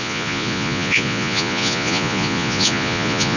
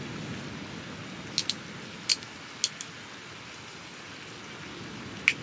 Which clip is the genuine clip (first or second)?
second